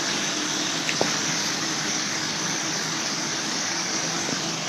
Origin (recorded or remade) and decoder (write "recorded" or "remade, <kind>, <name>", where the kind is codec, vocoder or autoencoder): remade, codec, DAC